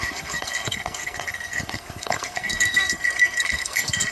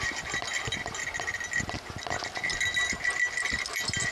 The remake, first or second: first